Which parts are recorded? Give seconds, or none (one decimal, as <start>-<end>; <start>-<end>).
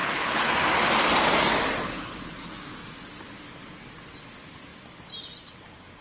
0.5-1.8; 2.5-6.0